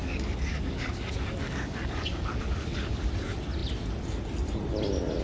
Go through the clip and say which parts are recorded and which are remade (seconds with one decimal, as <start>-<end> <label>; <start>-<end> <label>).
0.0-3.1 remade; 3.1-5.2 recorded